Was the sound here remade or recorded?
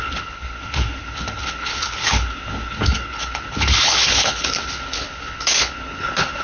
remade